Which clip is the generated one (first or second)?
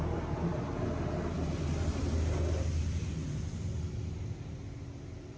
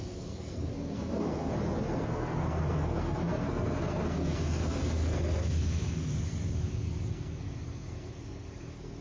second